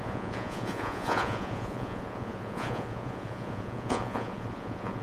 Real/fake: fake